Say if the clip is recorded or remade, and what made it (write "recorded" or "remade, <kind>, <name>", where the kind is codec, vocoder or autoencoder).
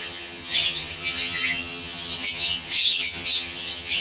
remade, vocoder, HiFi-GAN